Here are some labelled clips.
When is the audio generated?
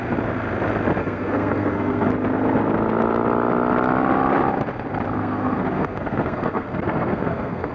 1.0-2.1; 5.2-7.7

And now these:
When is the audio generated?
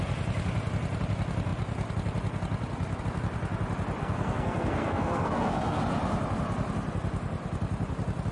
4.0-5.8